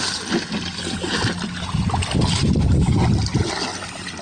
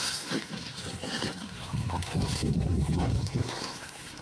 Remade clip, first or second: second